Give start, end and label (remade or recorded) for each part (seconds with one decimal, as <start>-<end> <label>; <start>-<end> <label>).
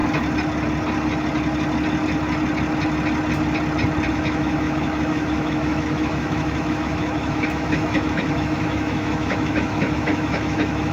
0.0-4.1 recorded; 4.1-10.9 remade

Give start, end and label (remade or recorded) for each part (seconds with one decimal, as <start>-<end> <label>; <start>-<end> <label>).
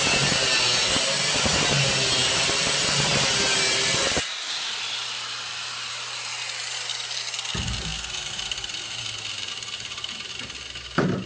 0.0-11.3 recorded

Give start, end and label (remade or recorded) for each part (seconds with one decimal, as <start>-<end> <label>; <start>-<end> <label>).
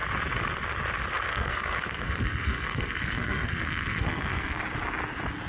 0.0-1.3 recorded; 1.3-4.6 remade; 4.6-5.5 recorded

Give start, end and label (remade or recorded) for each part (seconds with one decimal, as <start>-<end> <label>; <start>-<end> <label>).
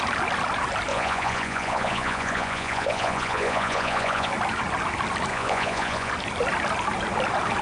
0.0-0.9 recorded; 0.9-4.3 remade; 4.3-5.3 recorded; 5.3-6.1 remade; 6.1-7.6 recorded